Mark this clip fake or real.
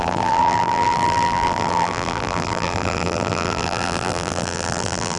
fake